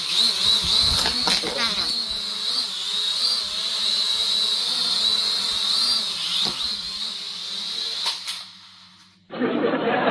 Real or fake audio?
real